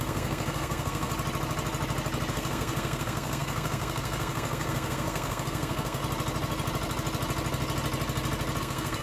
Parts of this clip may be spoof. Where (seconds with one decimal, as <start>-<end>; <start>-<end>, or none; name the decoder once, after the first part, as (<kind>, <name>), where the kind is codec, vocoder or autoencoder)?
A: 0.0-1.1 (codec, SNAC); 2.3-6.0; 8.6-9.0